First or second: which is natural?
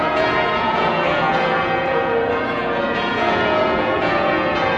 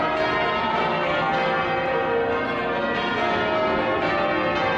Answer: second